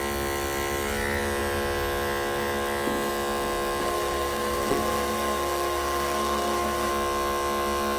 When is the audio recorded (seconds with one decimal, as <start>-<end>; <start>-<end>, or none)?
0.0-3.8; 6.9-8.0